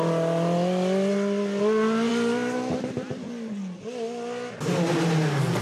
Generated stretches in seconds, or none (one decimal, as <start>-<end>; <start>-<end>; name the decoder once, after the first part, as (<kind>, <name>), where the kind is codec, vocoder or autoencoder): none